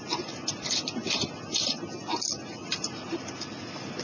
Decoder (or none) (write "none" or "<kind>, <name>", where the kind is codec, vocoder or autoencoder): vocoder, BigVGAN v2